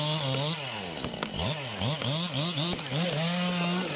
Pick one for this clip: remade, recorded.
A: recorded